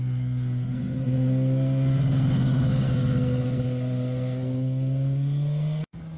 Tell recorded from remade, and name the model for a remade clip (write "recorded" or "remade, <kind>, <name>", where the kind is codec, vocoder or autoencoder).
remade, codec, SNAC